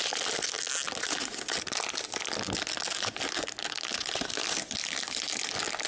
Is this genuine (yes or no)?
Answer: yes